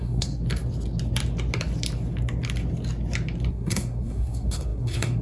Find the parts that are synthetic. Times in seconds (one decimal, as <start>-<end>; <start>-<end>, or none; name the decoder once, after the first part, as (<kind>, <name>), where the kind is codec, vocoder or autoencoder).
0.0-0.4 (codec, SNAC); 3.5-5.2